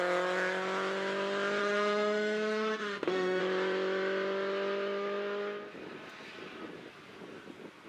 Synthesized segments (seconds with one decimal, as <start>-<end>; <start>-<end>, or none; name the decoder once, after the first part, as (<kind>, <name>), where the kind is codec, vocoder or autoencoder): 1.6-3.4 (autoencoder, DAC-VAE)